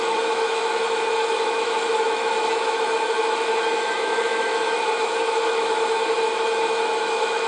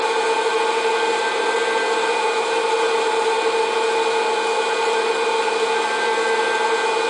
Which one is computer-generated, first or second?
first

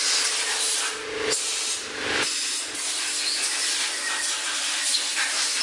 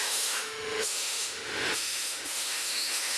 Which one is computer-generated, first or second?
second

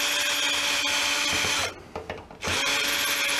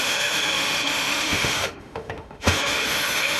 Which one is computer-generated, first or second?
second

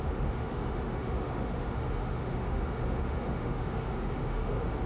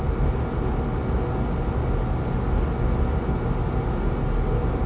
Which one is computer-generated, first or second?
first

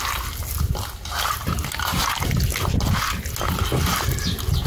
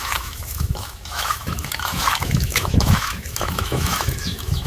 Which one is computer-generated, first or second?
second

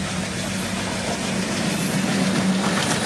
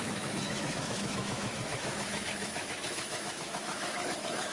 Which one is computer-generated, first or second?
second